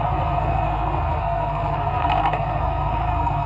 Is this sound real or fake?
fake